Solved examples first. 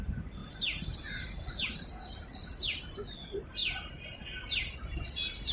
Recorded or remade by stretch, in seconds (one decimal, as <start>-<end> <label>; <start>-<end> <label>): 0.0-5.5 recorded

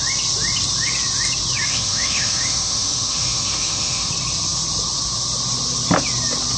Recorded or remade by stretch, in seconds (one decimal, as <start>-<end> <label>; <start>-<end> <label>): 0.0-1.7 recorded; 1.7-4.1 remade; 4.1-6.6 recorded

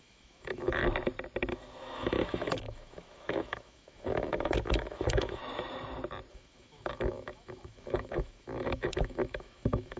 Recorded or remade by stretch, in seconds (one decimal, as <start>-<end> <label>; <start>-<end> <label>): 0.0-0.8 remade; 0.8-1.5 recorded; 1.5-5.4 remade; 5.4-6.3 recorded; 6.3-10.0 remade

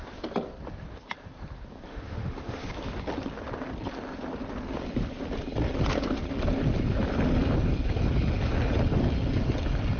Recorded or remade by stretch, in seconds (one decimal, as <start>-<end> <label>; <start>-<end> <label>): 0.0-1.9 recorded; 1.9-2.7 remade; 2.7-10.0 recorded